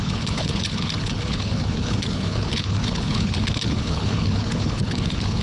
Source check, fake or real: fake